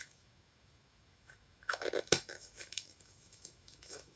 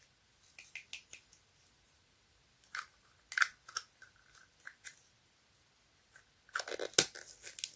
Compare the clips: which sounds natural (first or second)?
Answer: second